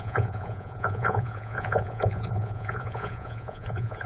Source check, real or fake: fake